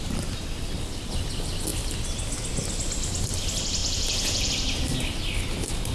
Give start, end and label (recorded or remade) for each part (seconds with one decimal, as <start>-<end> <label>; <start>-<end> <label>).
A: 0.0-3.8 recorded; 3.8-4.5 remade; 4.5-5.9 recorded